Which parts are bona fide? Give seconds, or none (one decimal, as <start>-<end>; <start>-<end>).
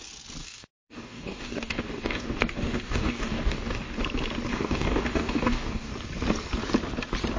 0.0-0.4; 4.0-4.5; 5.9-7.4